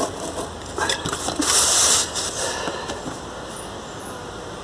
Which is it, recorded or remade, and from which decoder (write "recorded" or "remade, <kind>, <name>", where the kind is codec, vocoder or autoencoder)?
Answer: recorded